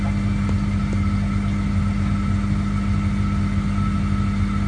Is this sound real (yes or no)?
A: yes